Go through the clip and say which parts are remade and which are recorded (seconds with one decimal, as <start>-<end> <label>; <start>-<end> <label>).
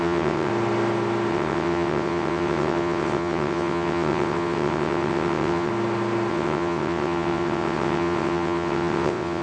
0.0-0.5 remade; 0.5-1.3 recorded; 1.3-5.7 remade; 5.7-6.3 recorded; 6.3-9.4 remade